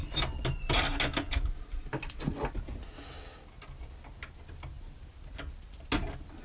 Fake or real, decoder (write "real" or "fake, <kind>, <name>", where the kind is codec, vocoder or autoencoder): real